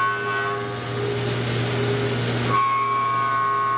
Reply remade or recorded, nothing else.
recorded